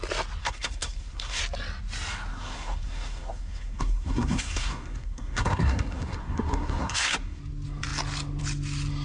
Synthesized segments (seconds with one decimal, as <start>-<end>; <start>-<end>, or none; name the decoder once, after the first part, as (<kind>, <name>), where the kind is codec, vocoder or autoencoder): 0.4-1.4 (codec, SNAC); 2.3-7.4